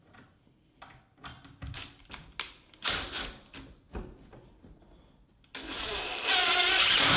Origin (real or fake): real